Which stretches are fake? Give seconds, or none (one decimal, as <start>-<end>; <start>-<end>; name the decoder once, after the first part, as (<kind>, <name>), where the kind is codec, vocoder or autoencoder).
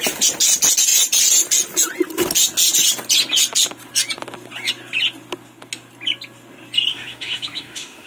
6.9-8.1 (autoencoder, DAC-VAE)